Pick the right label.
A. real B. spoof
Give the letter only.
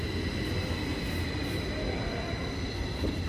A